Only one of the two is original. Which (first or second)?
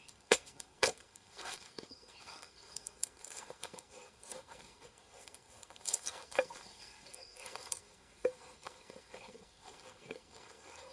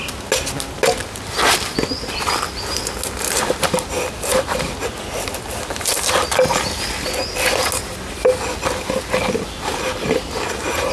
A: second